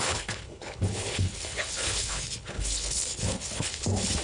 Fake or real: fake